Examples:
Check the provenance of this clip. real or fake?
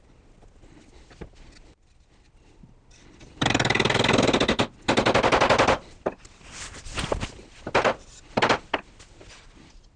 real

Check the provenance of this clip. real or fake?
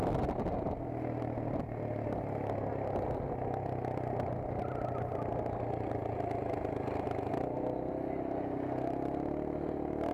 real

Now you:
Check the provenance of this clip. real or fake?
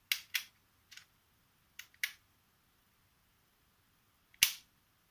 real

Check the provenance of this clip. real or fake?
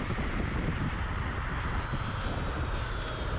real